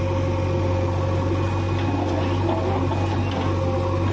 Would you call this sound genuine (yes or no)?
yes